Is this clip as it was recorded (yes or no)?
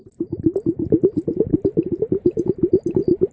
yes